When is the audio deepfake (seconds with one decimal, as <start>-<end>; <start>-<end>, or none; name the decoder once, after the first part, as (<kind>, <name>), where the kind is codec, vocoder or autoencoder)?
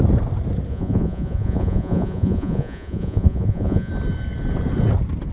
0.7-3.9 (vocoder, Vocos)